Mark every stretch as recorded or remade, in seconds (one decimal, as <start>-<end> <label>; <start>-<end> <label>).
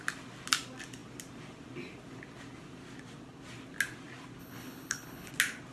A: 0.0-4.4 recorded; 4.4-5.3 remade; 5.3-5.7 recorded